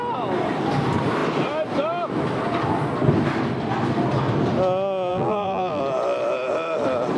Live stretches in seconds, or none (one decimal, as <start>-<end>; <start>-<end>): 0.0-5.1; 5.8-7.2